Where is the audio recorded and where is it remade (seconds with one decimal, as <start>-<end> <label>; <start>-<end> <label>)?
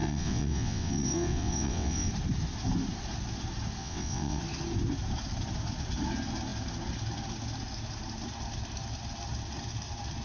0.0-2.1 remade; 2.1-3.8 recorded; 3.8-4.4 remade; 4.4-10.2 recorded